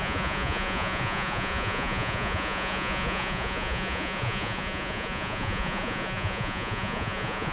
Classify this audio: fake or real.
fake